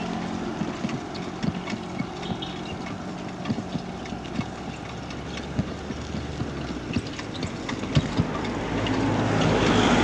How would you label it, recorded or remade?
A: recorded